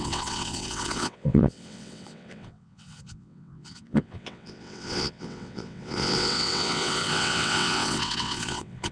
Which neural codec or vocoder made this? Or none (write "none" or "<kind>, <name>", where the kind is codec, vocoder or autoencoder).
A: vocoder, WaveNeXt